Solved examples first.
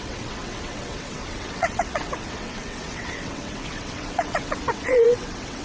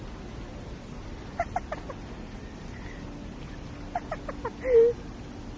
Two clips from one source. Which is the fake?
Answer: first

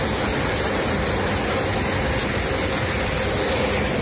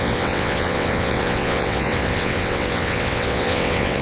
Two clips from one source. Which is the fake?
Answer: second